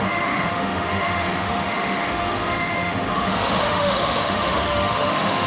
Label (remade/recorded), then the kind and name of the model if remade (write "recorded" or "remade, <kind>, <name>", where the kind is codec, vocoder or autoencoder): remade, autoencoder, DAC-VAE